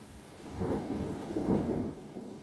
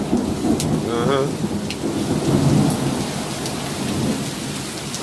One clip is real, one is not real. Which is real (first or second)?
second